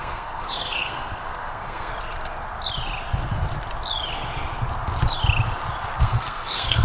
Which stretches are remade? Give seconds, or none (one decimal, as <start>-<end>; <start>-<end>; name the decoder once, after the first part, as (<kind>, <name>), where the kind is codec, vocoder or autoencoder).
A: 0.0-1.9 (codec, SNAC); 6.0-6.8